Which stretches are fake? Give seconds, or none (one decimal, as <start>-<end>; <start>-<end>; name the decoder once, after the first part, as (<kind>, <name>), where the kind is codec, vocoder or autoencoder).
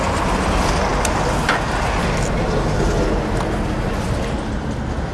none